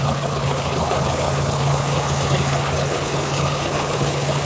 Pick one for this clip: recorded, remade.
remade